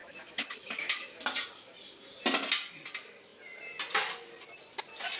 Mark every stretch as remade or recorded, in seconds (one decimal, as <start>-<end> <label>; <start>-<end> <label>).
0.0-1.2 remade; 1.2-5.2 recorded